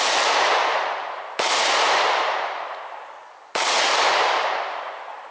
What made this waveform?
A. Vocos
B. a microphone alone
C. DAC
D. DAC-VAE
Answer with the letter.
B